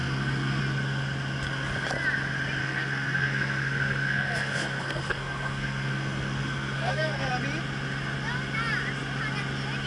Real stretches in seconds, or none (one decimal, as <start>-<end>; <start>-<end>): 0.6-2.6; 7.3-9.9